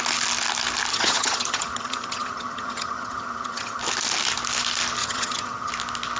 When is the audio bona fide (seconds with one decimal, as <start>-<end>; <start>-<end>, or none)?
0.0-0.9; 3.8-5.0; 5.7-6.2